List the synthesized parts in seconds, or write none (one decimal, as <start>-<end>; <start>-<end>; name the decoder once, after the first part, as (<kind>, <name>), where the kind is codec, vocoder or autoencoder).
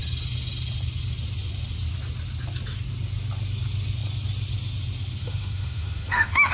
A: 5.2-6.5 (autoencoder, DAC-VAE)